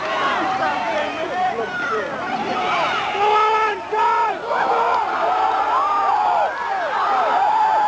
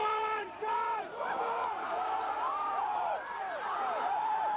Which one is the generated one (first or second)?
second